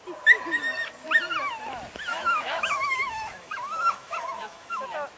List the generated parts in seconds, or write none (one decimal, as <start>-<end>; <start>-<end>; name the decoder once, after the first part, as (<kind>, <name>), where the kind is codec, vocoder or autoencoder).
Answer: 2.1-4.8 (autoencoder, DAC-VAE)